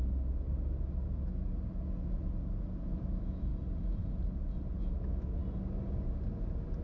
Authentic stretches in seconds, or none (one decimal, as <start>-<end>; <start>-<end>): 0.0-2.9; 3.5-4.8; 5.4-6.8